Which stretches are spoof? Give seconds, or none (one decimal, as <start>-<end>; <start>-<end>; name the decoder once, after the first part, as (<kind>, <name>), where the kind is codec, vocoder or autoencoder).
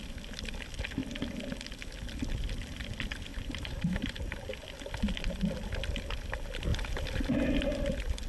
3.3-4.6 (vocoder, BigVGAN v2)